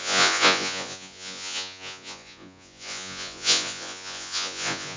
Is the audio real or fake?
fake